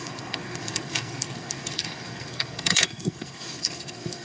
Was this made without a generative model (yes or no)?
no